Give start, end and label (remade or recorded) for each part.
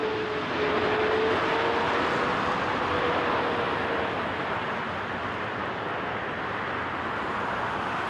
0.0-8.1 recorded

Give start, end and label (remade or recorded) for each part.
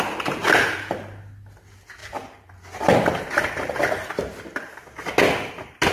0.0-0.4 recorded; 0.4-0.9 remade; 0.9-5.9 recorded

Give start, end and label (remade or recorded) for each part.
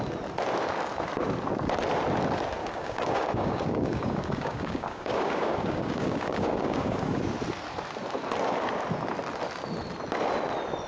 0.0-2.6 recorded; 2.6-7.2 remade; 7.2-10.9 recorded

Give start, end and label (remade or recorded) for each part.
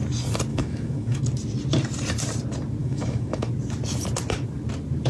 0.0-0.5 recorded; 0.5-1.2 remade; 1.2-2.8 recorded; 2.8-3.5 remade; 3.5-5.1 recorded